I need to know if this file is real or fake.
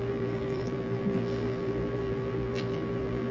fake